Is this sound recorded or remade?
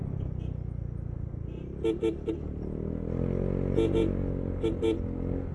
recorded